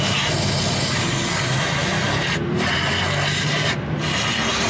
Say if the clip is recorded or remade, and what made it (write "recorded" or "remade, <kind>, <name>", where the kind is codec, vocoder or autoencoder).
recorded